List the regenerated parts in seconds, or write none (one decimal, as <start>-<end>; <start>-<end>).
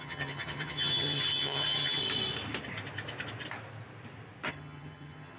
0.0-2.0; 4.5-5.4